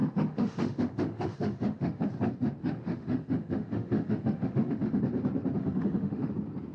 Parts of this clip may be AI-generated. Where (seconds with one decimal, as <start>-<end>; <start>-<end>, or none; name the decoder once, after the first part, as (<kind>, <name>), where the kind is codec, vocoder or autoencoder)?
0.0-2.0 (autoencoder, DAC-VAE); 2.6-5.0; 5.6-6.3